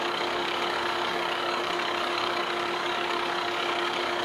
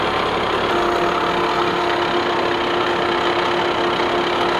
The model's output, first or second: first